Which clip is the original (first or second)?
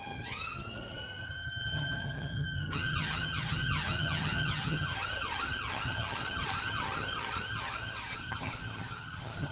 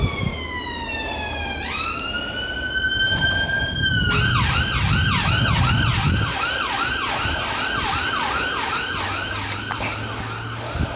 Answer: second